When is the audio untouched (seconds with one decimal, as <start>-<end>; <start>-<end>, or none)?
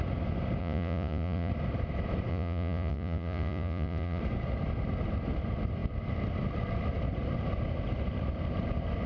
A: 0.0-0.6; 1.5-2.3; 4.2-9.1